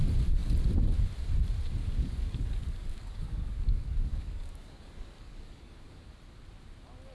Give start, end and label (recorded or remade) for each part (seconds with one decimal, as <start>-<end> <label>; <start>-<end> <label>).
0.0-1.8 recorded; 1.8-6.1 remade; 6.1-7.1 recorded